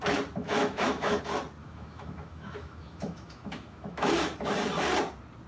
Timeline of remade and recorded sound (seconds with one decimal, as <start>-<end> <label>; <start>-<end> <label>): 0.0-0.4 recorded; 0.4-1.2 remade; 1.2-1.6 recorded; 1.6-4.1 remade; 4.1-5.5 recorded